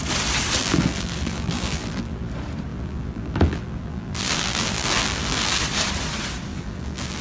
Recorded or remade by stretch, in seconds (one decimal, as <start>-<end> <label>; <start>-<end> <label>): 0.0-0.6 recorded; 0.6-2.3 remade; 2.3-2.7 recorded; 2.7-5.6 remade; 5.6-6.5 recorded; 6.5-7.2 remade